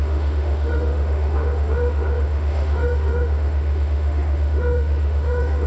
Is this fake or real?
fake